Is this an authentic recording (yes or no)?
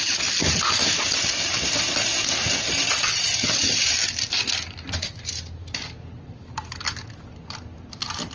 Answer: yes